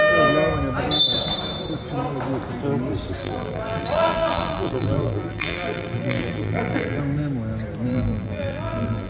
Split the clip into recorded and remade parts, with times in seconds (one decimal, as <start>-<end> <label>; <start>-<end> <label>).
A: 0.0-3.2 recorded; 3.2-7.0 remade; 7.0-7.9 recorded; 7.9-9.1 remade